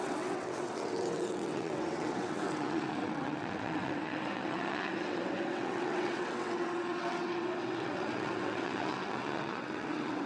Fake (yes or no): yes